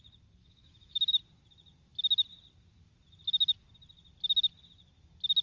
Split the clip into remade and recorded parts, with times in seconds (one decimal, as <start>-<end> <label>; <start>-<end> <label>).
0.0-0.4 recorded; 0.4-1.1 remade; 1.1-5.4 recorded